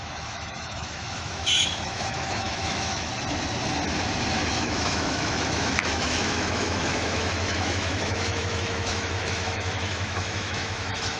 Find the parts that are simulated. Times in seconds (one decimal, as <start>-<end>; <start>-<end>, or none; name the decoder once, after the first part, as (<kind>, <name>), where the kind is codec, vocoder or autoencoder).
0.0-3.1 (autoencoder, DAC-VAE); 4.5-11.2